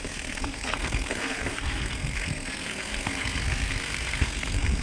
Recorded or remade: remade